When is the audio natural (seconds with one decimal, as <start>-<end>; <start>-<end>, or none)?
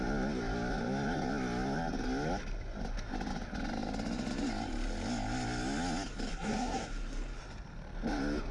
0.0-6.3; 6.9-8.5